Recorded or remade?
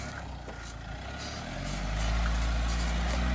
recorded